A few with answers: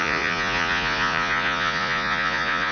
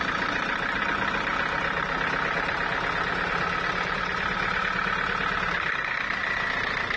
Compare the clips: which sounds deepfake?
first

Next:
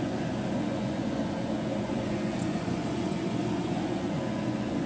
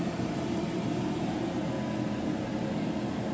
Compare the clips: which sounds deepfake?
first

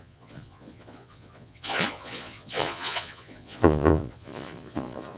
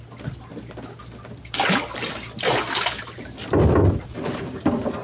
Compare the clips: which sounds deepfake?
first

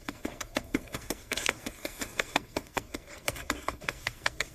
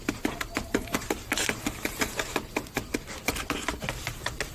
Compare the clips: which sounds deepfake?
first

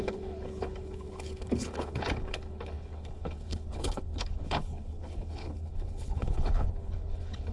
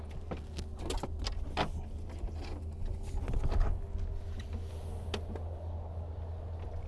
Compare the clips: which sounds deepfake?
first